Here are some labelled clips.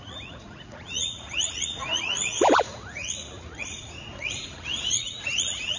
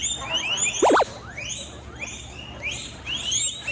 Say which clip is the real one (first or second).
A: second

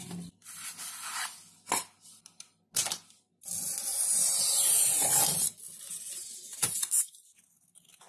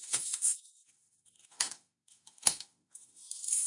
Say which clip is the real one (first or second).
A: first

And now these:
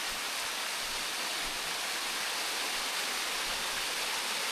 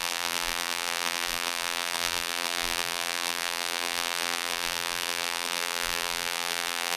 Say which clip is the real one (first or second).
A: first